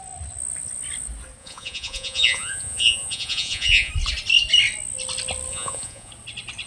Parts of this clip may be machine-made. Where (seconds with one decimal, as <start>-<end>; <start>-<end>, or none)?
1.4-3.9; 5.5-6.1